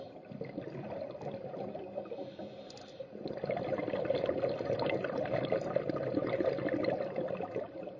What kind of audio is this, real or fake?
real